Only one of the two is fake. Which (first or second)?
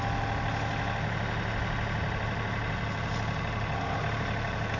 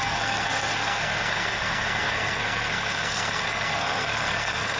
second